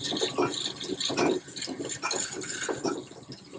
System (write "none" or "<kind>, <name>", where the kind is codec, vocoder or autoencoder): none